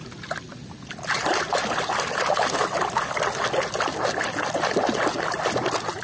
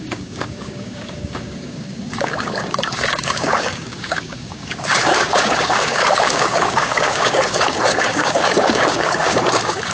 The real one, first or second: first